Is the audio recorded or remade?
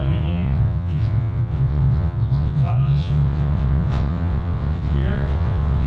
remade